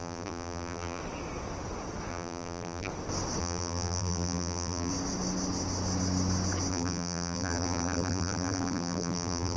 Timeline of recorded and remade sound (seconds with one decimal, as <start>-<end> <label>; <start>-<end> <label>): 0.0-1.0 remade; 1.0-2.1 recorded; 2.1-2.9 remade; 2.9-3.4 recorded; 3.4-4.9 remade; 4.9-6.7 recorded; 6.7-9.6 remade